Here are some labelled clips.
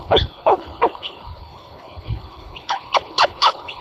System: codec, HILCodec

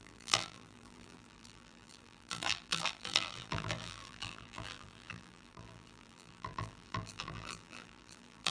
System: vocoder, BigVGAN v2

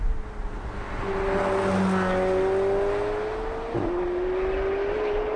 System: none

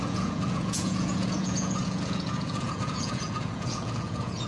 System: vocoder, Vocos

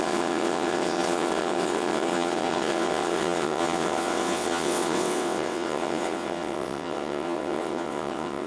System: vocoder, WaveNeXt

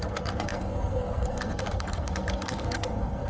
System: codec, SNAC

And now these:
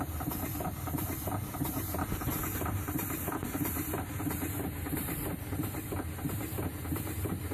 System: vocoder, BigVGAN v2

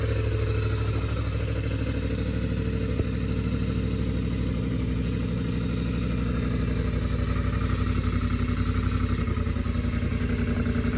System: none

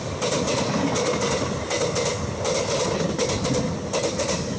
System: none